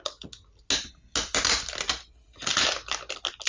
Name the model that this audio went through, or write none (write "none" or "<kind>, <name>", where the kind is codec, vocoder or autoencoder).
none